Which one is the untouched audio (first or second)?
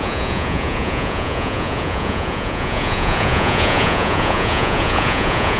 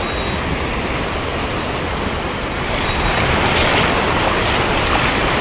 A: second